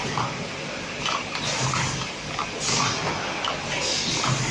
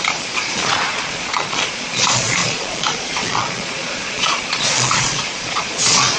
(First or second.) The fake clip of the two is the second